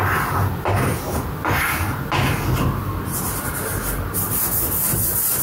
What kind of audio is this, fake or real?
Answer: real